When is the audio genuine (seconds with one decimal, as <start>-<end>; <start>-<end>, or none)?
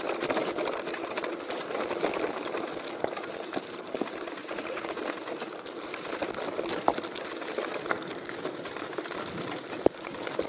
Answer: 0.0-4.4; 5.0-10.5